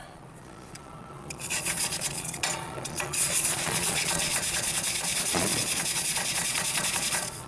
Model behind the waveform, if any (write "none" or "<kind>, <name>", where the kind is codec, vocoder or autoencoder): vocoder, Vocos